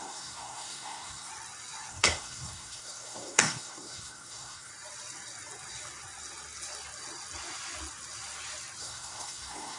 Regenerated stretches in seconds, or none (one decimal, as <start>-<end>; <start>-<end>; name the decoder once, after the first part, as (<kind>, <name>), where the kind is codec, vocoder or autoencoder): 0.0-1.3 (codec, SNAC); 1.9-4.7; 8.8-9.8

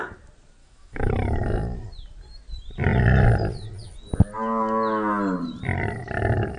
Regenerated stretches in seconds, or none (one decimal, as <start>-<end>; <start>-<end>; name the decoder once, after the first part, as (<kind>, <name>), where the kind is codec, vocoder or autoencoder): 0.6-1.1 (autoencoder, DAC-VAE)

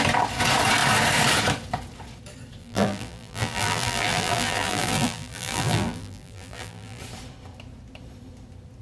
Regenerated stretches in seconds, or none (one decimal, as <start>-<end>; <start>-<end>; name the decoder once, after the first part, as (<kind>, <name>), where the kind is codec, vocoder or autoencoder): 2.6-7.0 (vocoder, BigVGAN v2)

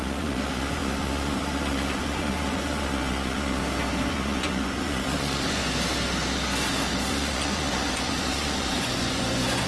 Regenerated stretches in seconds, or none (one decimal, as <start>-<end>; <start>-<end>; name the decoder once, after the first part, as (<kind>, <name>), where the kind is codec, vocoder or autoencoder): 0.0-3.6 (vocoder, Vocos); 4.1-5.6; 7.1-9.7